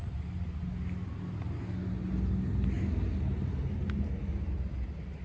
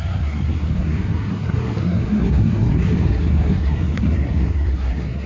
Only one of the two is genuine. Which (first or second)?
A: first